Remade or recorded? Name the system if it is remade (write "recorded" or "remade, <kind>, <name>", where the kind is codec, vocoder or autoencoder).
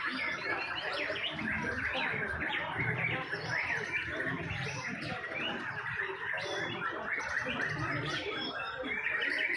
remade, vocoder, BigVGAN v2